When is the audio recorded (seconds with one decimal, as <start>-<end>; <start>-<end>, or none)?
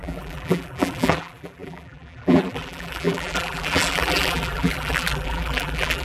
none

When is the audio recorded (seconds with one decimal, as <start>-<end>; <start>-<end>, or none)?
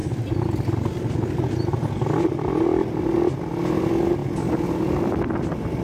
0.0-5.8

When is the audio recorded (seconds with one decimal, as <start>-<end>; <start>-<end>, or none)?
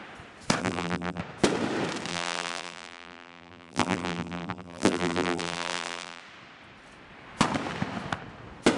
0.0-0.6; 1.2-2.1; 6.2-8.8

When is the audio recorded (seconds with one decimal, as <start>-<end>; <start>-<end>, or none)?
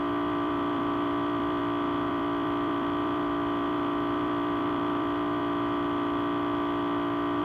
1.6-2.1; 5.4-7.4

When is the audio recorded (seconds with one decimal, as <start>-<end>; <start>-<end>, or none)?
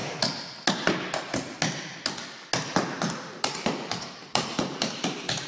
0.0-3.3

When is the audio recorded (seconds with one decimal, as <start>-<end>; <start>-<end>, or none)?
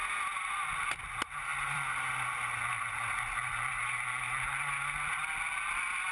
0.0-1.5; 2.1-3.4; 4.2-6.1